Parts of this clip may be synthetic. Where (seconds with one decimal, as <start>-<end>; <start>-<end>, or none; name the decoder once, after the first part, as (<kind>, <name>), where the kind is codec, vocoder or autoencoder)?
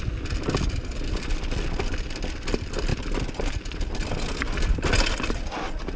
none